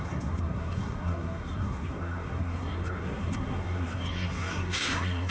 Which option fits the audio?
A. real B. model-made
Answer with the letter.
B